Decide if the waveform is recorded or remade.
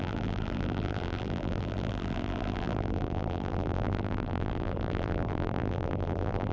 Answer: remade